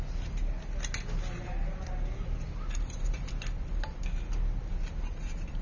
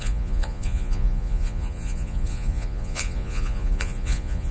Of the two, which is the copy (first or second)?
second